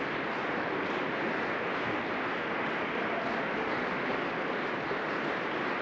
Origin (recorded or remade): recorded